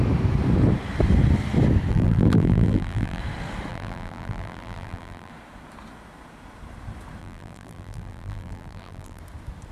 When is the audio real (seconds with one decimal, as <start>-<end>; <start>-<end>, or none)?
0.0-1.9; 3.2-3.7; 5.3-7.2; 9.2-9.7

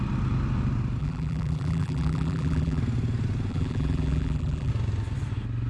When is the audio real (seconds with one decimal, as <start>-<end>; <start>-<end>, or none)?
0.0-1.0; 2.8-3.5; 4.7-5.7